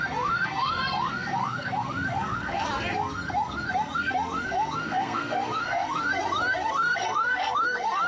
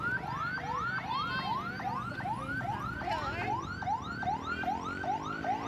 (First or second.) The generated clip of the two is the first